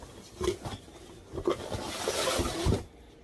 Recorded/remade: recorded